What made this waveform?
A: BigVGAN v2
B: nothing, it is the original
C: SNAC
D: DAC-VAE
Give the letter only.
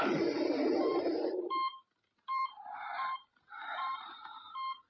A